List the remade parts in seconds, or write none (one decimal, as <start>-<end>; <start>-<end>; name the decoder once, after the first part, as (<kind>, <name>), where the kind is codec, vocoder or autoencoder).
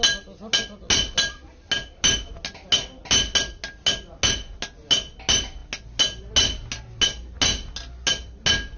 none